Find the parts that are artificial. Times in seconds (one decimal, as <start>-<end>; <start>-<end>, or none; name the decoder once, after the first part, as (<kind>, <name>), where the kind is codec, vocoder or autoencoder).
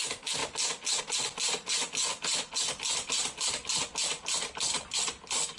none